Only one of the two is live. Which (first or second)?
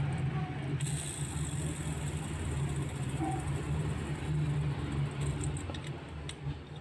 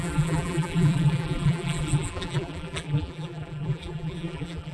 first